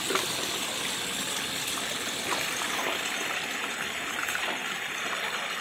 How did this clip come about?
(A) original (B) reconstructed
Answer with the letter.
A